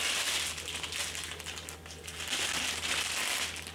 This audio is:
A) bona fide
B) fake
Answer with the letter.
A